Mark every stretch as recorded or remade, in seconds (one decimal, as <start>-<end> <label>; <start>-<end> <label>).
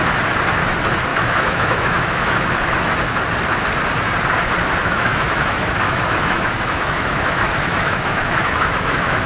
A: 0.0-1.1 recorded; 1.1-3.0 remade; 3.0-4.8 recorded; 4.8-9.3 remade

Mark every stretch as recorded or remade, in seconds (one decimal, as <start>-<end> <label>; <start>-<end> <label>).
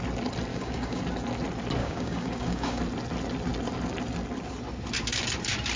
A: 0.0-0.5 recorded; 0.5-1.0 remade; 1.0-1.8 recorded; 1.8-2.8 remade; 2.8-5.8 recorded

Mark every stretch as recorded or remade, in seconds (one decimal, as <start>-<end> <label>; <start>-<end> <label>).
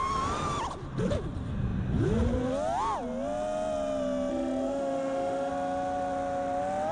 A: 0.0-4.3 recorded; 4.3-5.5 remade; 5.5-6.9 recorded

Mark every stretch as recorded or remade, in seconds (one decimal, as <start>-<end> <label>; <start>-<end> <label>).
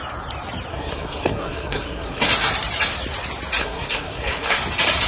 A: 0.0-0.7 recorded; 0.7-2.2 remade; 2.2-3.6 recorded; 3.6-4.6 remade; 4.6-5.1 recorded